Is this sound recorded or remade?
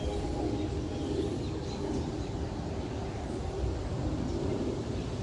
recorded